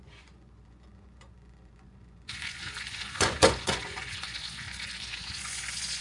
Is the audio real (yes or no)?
no